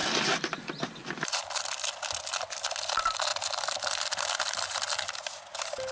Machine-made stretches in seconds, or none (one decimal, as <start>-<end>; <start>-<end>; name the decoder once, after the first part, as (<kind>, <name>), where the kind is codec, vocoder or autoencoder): none